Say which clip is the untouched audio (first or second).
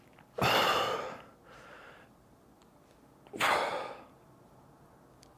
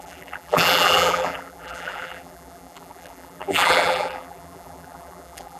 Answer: first